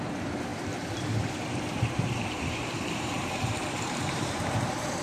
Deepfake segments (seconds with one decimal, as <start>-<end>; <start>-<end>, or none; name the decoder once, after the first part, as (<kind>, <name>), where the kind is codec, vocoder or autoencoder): 0.0-5.0 (vocoder, BigVGAN v2)